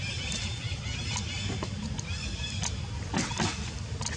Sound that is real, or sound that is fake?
real